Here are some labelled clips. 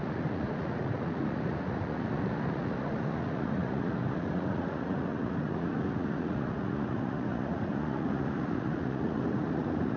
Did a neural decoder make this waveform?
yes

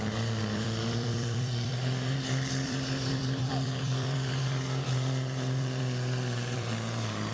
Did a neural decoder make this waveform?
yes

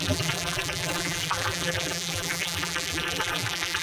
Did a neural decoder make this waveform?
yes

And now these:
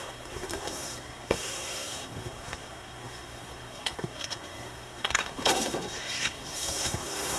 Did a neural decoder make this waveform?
yes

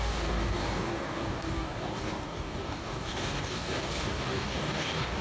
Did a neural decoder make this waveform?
yes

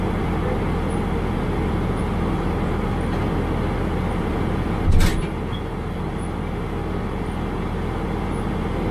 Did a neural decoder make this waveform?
no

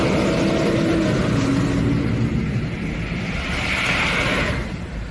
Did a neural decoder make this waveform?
no